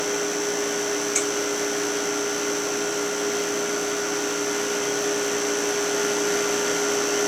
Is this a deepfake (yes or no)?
no